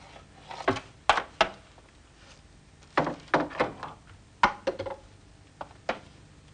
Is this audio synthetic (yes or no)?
no